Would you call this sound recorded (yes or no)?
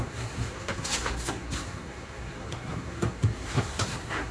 no